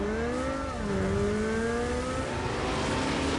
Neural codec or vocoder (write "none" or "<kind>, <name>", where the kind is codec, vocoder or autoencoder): none